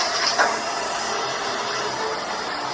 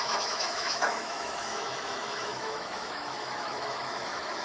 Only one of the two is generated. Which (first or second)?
second